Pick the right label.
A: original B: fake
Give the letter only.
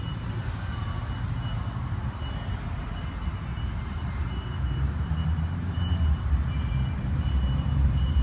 B